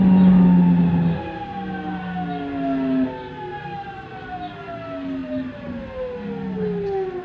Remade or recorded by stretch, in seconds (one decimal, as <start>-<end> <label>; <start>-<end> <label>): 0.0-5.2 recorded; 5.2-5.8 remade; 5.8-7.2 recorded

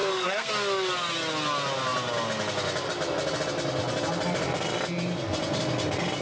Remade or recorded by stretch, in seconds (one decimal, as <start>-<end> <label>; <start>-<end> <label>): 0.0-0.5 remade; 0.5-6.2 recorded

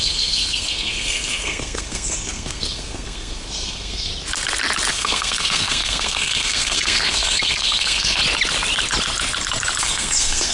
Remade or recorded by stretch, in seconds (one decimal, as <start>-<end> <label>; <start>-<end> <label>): 0.0-4.1 remade; 4.1-4.9 recorded; 4.9-8.2 remade; 8.2-9.8 recorded; 9.8-10.5 remade

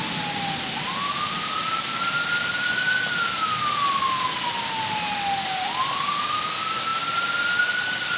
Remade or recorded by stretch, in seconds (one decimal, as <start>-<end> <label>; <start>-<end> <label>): 0.0-8.2 recorded

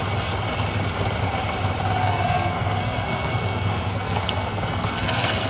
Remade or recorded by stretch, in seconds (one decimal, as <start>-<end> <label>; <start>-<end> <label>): 0.0-2.0 recorded; 2.0-5.5 remade

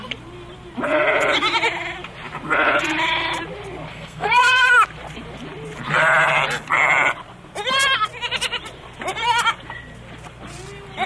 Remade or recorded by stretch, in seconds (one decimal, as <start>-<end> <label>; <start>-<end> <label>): 0.0-3.9 recorded; 3.9-4.7 remade; 4.7-11.1 recorded